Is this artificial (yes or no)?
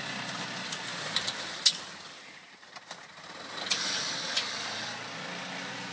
no